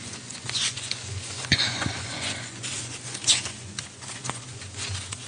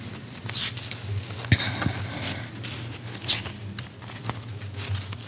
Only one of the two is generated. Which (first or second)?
first